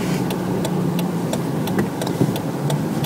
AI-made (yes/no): no